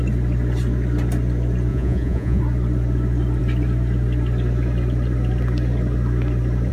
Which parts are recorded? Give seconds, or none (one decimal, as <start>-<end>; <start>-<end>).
0.0-1.7; 2.4-6.7